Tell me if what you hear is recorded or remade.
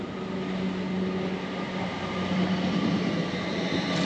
recorded